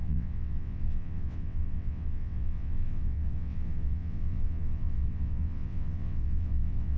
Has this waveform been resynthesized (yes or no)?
yes